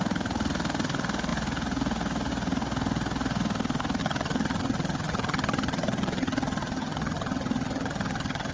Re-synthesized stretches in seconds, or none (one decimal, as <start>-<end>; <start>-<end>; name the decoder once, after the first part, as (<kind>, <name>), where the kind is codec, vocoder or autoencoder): 4.0-8.5 (vocoder, HiFi-GAN)